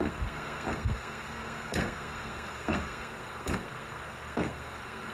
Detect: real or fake fake